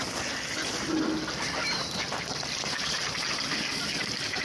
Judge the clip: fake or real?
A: real